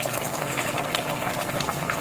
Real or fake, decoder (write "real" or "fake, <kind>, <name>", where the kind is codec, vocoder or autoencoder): fake, codec, SNAC